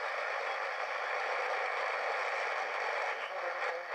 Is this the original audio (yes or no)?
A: yes